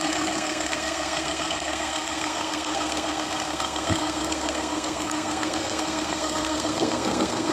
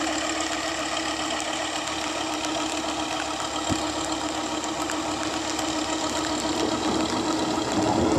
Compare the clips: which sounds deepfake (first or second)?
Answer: first